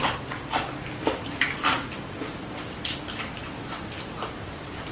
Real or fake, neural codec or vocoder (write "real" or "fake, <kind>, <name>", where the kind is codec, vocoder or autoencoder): real